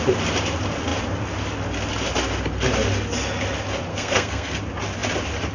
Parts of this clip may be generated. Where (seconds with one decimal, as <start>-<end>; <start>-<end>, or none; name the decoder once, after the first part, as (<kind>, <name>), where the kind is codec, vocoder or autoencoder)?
3.9-4.6 (codec, SNAC)